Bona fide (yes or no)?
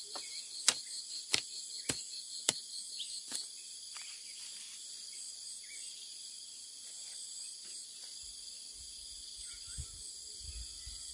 yes